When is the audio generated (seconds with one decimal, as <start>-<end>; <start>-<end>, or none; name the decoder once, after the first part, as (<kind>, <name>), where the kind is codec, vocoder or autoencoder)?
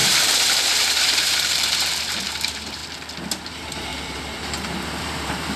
0.0-2.8 (vocoder, BigVGAN v2); 3.4-5.6